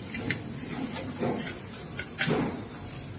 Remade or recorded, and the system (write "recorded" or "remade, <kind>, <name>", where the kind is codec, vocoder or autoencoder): recorded